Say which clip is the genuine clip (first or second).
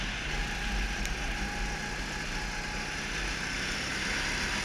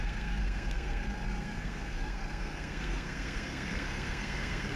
first